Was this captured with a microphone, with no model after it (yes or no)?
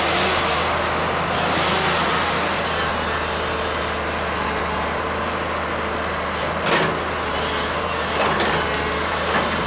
yes